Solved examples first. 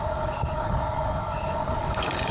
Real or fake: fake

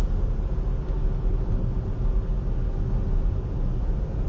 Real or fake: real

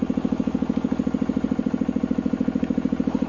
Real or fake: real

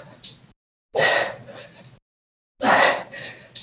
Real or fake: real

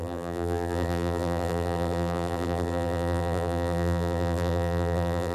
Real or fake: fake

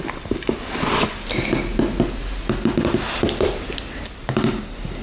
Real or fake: real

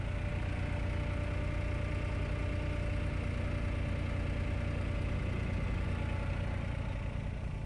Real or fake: real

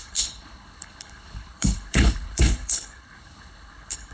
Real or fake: fake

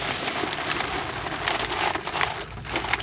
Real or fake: real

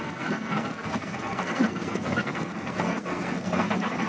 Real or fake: fake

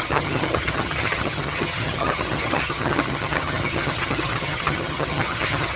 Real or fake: fake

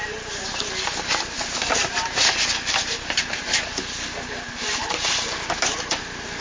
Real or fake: real